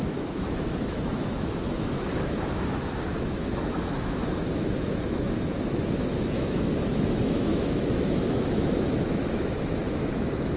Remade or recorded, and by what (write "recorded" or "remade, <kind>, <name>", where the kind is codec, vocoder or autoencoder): remade, autoencoder, DAC-VAE